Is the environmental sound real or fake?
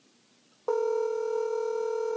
real